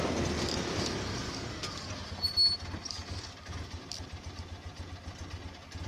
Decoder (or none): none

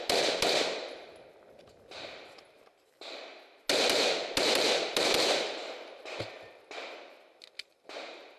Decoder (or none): none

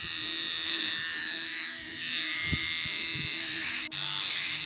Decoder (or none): autoencoder, DAC-VAE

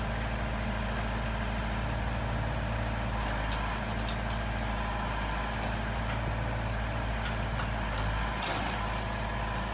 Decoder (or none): none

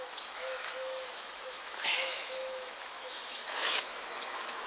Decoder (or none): autoencoder, DAC-VAE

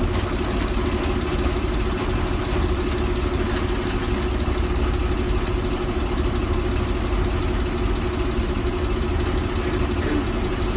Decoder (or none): none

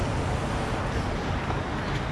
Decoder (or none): none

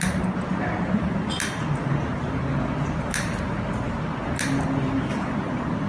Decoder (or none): none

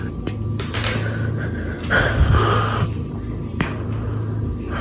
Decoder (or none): none